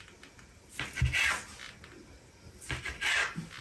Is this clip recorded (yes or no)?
yes